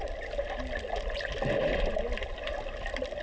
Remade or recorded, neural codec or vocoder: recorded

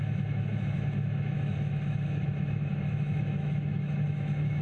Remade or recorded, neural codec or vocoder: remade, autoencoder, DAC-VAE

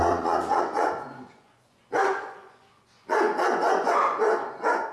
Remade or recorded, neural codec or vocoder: remade, vocoder, Vocos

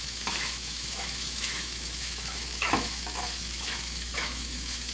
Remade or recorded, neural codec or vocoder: remade, autoencoder, DAC-VAE